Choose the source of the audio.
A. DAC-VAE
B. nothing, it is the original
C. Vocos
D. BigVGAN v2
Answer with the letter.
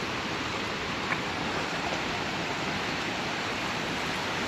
D